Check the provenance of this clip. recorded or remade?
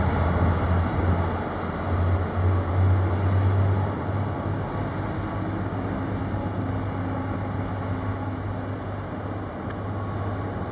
recorded